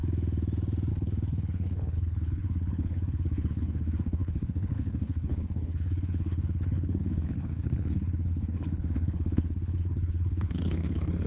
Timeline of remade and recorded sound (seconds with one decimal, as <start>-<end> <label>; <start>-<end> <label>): 0.0-0.9 recorded; 0.9-11.3 remade